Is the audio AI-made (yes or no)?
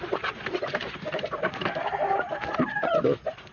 no